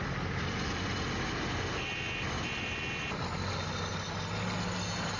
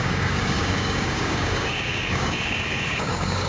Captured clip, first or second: first